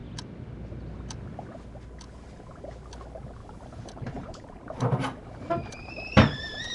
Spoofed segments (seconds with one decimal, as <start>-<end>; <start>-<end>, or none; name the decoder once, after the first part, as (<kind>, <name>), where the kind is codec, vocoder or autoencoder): 3.4-6.7 (vocoder, BigVGAN v2)